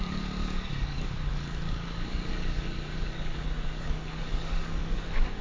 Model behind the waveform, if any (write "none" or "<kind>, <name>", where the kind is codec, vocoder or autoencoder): codec, DAC